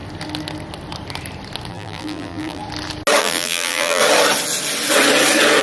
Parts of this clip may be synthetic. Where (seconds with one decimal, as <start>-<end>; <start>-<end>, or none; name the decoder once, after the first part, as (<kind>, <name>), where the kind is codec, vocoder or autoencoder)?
1.7-2.6 (vocoder, BigVGAN v2); 3.2-4.0